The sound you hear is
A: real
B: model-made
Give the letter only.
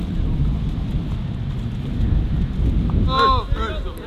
A